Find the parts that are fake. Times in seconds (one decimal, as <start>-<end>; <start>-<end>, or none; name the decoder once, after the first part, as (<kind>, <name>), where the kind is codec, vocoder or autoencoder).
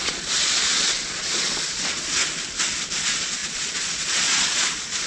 0.0-2.2 (vocoder, Vocos); 3.0-5.1